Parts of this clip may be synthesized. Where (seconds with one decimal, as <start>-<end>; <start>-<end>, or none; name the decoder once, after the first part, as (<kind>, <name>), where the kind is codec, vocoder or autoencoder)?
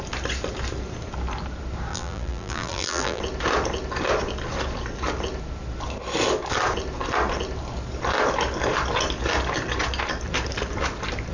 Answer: 1.9-3.2 (vocoder, BigVGAN v2)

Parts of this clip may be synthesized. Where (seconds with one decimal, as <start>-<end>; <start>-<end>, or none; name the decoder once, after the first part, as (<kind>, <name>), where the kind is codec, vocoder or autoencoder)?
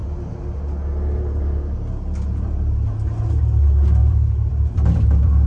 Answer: 4.0-5.5 (vocoder, BigVGAN v2)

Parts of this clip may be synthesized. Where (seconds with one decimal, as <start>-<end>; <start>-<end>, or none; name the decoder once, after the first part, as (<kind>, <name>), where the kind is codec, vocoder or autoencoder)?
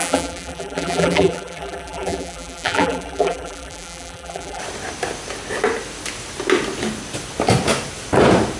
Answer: 0.0-4.6 (vocoder, BigVGAN v2)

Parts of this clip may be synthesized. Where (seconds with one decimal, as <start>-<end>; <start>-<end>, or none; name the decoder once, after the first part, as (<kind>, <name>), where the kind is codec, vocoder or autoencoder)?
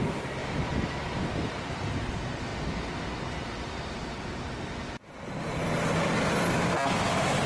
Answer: 0.4-2.1 (vocoder, BigVGAN v2)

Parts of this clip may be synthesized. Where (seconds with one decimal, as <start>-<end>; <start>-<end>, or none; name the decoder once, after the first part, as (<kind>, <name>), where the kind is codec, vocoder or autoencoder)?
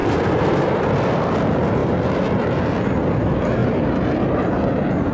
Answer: 0.0-0.6 (vocoder, BigVGAN v2); 3.6-4.4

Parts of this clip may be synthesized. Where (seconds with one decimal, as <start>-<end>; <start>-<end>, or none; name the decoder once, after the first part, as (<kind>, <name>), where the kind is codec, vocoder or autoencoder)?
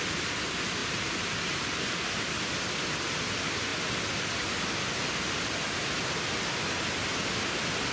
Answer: 0.8-2.4 (vocoder, BigVGAN v2)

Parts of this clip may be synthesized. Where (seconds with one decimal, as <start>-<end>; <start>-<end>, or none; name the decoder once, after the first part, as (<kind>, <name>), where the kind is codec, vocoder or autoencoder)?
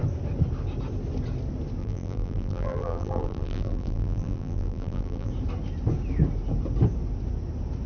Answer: 1.8-5.3 (vocoder, BigVGAN v2)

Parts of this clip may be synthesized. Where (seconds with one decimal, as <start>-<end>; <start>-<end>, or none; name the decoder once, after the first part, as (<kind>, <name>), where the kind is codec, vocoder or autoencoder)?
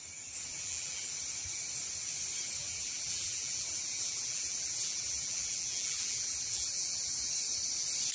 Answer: 0.5-1.1 (vocoder, BigVGAN v2); 2.6-7.3